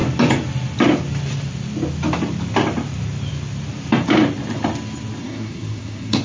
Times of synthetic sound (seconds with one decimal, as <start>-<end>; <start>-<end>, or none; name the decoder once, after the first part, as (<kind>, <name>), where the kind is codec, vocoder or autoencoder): 5.2-6.2 (codec, SNAC)